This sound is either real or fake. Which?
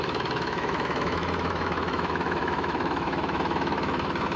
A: fake